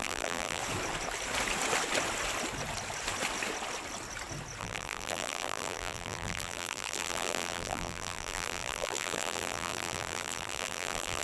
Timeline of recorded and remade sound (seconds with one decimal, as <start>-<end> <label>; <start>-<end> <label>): 0.0-0.6 remade; 0.6-4.6 recorded; 4.6-11.2 remade